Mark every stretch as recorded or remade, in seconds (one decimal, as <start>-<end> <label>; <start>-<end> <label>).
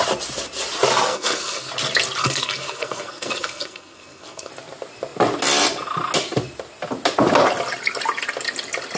0.0-1.1 recorded; 1.1-1.7 remade; 1.7-2.2 recorded; 2.2-4.5 remade; 4.5-9.0 recorded